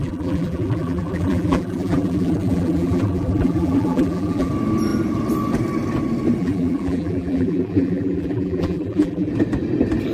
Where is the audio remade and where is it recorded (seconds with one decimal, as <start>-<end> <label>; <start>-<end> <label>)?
0.0-4.5 remade; 4.5-6.4 recorded; 6.4-9.3 remade; 9.3-10.1 recorded